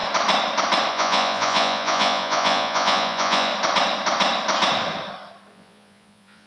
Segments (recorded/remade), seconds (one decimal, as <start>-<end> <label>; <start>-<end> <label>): 0.0-0.9 recorded; 0.9-3.5 remade; 3.5-5.5 recorded; 5.5-6.5 remade